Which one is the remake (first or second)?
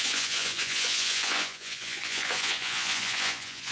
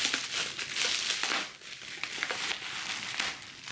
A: first